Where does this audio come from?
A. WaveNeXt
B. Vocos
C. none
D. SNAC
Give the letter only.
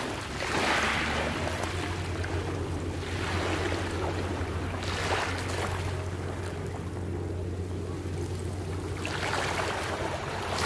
C